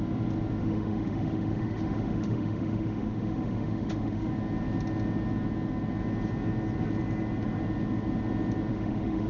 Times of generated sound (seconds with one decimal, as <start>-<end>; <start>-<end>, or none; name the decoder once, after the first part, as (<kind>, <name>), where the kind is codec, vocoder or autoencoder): 0.6-4.3 (autoencoder, DAC-VAE); 8.7-9.3